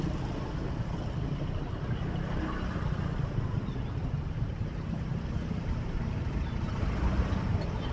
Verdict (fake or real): real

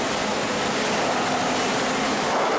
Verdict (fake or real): real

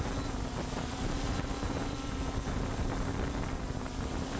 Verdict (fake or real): real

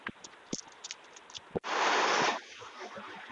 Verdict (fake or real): real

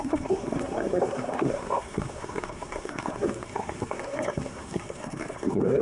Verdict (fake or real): fake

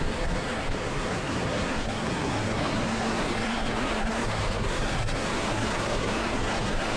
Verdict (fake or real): fake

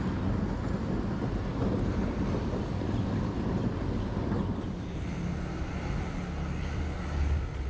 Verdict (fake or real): real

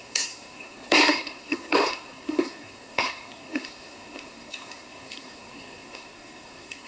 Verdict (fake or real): fake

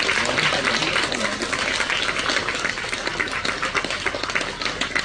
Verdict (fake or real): real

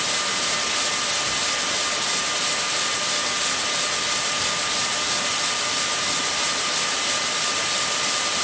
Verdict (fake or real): real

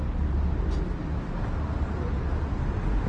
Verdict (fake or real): real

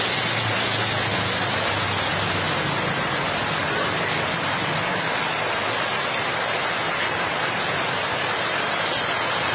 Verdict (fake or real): real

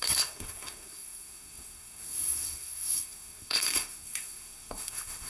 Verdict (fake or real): fake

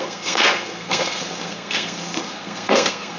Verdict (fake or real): fake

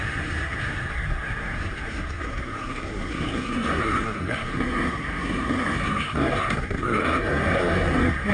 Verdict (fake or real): fake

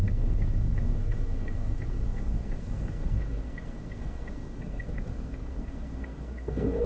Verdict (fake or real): fake